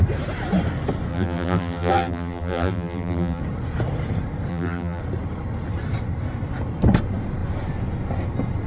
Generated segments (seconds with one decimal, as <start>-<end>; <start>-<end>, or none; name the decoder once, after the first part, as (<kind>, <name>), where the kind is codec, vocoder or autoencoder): 1.1-3.4 (vocoder, BigVGAN v2); 4.5-5.0